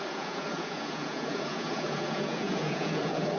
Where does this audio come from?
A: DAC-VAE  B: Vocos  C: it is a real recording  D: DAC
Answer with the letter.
B